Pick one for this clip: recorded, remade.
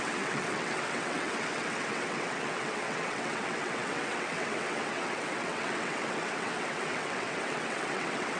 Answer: remade